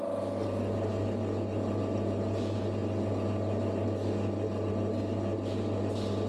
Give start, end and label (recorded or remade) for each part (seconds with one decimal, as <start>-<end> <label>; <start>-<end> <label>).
0.0-6.3 recorded